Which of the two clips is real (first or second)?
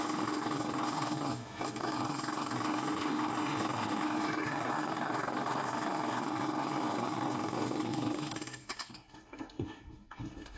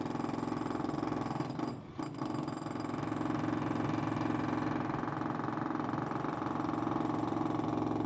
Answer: second